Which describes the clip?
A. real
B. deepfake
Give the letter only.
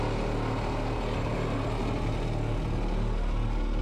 A